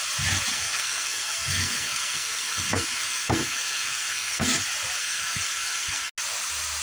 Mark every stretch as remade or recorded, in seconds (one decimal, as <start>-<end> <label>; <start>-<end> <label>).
0.0-0.5 recorded; 0.5-4.6 remade; 4.6-5.0 recorded; 5.0-6.1 remade; 6.1-6.8 recorded